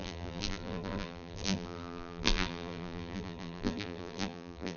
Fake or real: fake